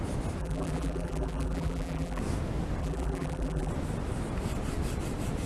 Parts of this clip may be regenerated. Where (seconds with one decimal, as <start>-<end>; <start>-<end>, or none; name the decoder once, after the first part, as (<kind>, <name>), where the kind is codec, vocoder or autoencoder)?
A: 0.4-2.2 (vocoder, BigVGAN v2); 2.8-3.7